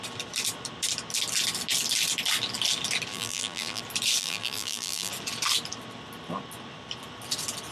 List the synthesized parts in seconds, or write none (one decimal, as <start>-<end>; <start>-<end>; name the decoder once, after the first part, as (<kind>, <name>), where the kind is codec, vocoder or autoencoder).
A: 3.1-3.8 (vocoder, BigVGAN v2); 4.2-5.1